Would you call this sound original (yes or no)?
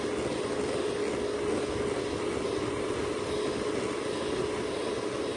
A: yes